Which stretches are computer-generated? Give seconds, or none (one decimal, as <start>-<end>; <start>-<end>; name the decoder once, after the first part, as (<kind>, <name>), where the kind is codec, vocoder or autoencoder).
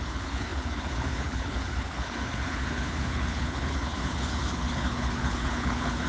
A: 0.0-6.1 (codec, HILCodec)